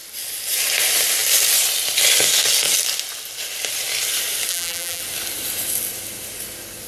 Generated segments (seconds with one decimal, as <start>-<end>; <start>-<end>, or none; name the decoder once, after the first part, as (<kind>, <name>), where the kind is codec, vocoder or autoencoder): 4.5-5.0 (vocoder, BigVGAN v2)